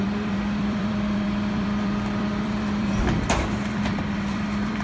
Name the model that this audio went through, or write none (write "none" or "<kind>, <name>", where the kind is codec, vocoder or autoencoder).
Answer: vocoder, BigVGAN v2